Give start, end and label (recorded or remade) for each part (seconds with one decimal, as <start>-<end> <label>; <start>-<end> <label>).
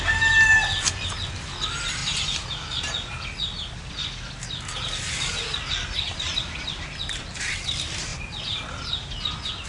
0.0-9.7 recorded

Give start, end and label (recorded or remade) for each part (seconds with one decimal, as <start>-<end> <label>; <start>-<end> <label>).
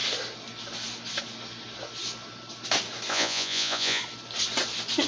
0.0-3.1 recorded; 3.1-4.0 remade; 4.0-5.1 recorded